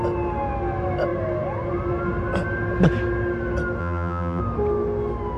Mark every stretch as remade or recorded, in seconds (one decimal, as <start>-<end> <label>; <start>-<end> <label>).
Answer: 0.0-3.8 recorded; 3.8-4.4 remade; 4.4-5.4 recorded